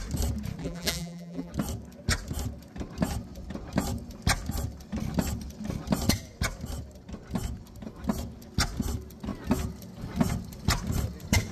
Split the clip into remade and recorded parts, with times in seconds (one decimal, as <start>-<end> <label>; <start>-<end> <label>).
0.0-0.6 recorded; 0.6-1.5 remade; 1.5-11.5 recorded